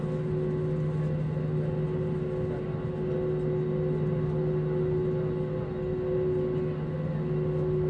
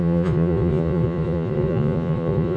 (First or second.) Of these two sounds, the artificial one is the second